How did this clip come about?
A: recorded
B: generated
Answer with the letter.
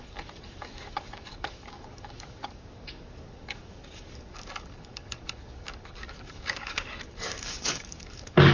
B